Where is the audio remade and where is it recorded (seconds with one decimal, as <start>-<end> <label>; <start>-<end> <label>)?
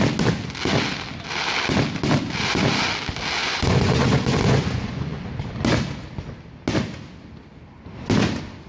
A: 0.0-3.4 recorded; 3.4-5.3 remade; 5.3-8.7 recorded